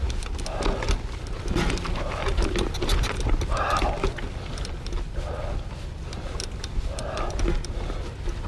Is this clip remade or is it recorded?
recorded